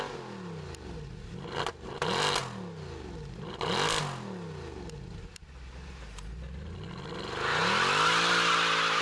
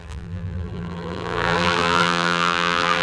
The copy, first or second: second